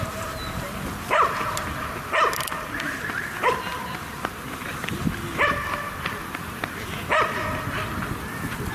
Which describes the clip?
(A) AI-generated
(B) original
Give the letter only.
B